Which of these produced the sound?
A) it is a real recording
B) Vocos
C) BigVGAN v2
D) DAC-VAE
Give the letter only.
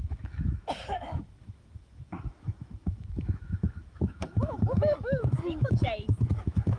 D